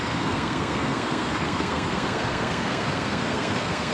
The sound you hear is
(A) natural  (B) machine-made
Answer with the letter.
B